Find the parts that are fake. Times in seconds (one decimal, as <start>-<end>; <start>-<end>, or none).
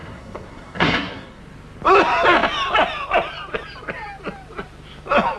0.0-1.4